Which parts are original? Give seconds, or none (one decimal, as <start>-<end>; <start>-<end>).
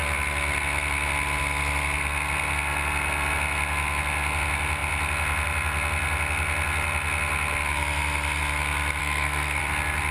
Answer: 0.0-9.0; 9.6-10.1